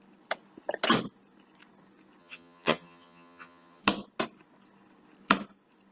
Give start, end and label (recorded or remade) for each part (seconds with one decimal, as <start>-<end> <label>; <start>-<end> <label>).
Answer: 0.0-2.2 recorded; 2.2-3.8 remade; 3.8-5.9 recorded